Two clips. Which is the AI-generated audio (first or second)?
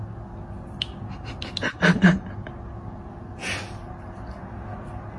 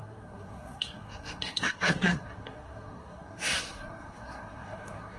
second